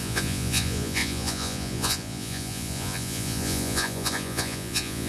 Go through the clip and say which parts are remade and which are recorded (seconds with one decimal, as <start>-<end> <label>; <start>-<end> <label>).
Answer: 0.0-5.1 remade